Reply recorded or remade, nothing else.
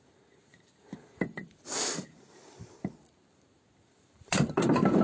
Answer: recorded